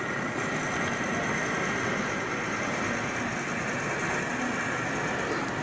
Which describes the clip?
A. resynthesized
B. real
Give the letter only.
B